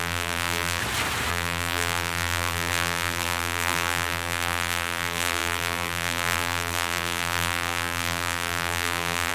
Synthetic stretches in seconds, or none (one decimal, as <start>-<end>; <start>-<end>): 0.0-0.8; 1.3-9.3